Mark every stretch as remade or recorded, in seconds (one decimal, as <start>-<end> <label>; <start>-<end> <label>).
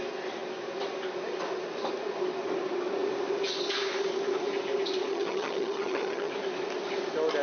0.0-5.1 recorded; 5.1-6.3 remade; 6.3-7.4 recorded